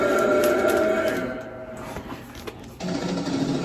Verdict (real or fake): real